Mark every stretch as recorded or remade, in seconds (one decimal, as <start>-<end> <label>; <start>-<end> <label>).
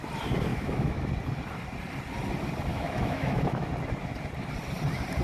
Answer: 0.0-0.5 recorded; 0.5-1.1 remade; 1.1-2.7 recorded; 2.7-3.7 remade; 3.7-5.2 recorded